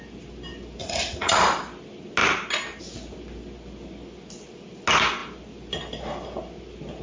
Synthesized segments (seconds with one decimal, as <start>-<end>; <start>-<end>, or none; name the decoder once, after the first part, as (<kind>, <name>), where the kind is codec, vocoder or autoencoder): 0.8-1.4 (vocoder, Vocos)